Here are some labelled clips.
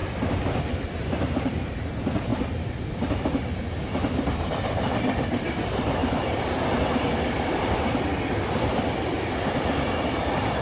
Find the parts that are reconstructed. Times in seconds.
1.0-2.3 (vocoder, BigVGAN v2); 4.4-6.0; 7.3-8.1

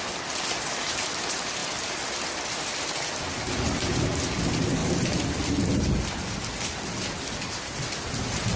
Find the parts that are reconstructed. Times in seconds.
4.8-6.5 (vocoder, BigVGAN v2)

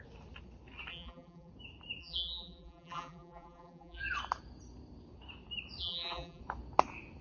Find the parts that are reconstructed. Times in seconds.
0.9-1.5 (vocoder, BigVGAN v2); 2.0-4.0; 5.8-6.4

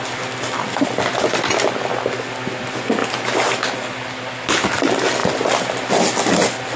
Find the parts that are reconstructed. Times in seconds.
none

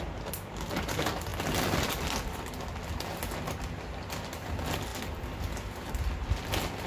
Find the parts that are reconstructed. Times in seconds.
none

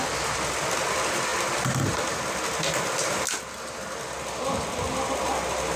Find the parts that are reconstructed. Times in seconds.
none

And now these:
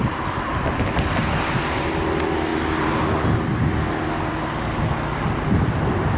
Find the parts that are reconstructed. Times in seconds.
none

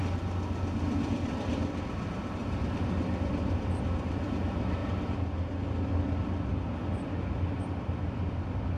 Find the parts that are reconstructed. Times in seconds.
0.8-4.8 (vocoder, BigVGAN v2); 7.6-8.8